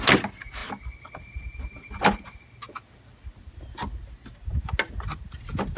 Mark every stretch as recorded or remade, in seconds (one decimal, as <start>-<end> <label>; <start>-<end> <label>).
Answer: 0.0-5.8 recorded